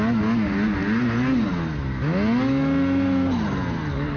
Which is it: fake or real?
real